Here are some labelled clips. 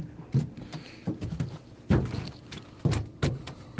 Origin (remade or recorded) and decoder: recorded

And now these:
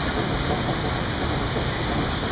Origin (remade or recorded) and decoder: recorded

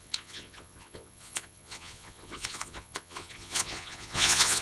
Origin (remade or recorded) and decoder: remade, vocoder, Vocos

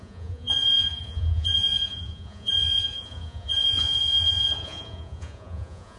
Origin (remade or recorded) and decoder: remade, vocoder, Vocos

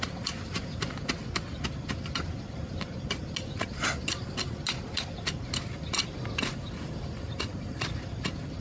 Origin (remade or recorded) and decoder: recorded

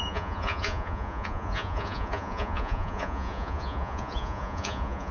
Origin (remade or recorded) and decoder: remade, vocoder, Vocos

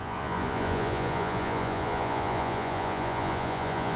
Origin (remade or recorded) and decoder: remade, vocoder, Vocos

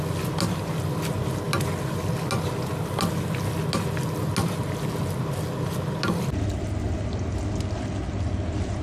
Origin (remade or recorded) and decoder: recorded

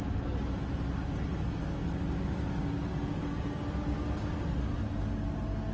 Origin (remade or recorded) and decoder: recorded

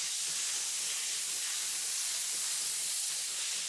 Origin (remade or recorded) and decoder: recorded